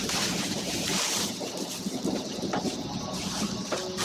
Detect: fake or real real